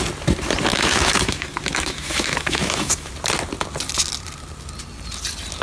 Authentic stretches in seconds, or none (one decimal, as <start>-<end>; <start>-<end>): 0.0-0.7; 3.1-5.6